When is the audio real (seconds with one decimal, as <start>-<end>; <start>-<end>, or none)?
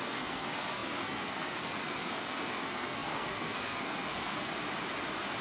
4.5-5.4